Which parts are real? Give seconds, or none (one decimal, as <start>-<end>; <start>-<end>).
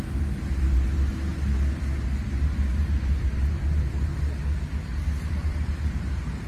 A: 1.3-2.3; 4.1-5.3